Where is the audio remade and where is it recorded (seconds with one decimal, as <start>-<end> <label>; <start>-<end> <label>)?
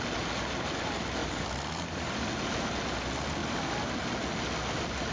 0.0-1.2 recorded; 1.2-2.2 remade; 2.2-5.1 recorded